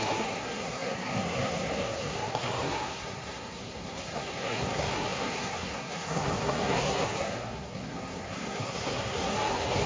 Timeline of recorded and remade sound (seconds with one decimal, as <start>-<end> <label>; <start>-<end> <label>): 0.0-9.9 remade